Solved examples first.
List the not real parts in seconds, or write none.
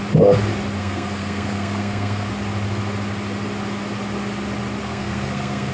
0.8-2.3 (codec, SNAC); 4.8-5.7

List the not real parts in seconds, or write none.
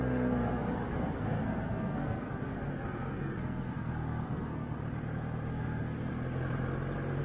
0.0-4.8 (codec, SNAC); 5.5-6.1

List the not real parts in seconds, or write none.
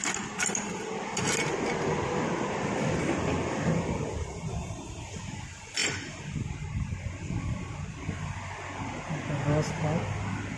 none